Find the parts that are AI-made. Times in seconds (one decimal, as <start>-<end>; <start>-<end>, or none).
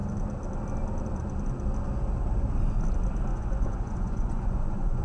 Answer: 3.3-5.0